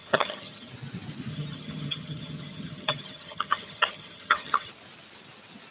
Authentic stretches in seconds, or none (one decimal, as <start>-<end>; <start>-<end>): 0.7-1.3; 4.7-5.7